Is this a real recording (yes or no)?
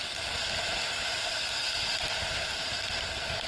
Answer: yes